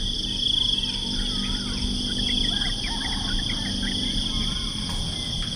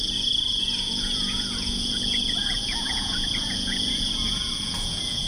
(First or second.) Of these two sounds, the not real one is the second